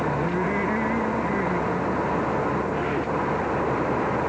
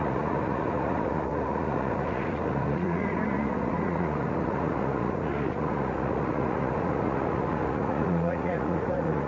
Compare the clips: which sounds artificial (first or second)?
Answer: second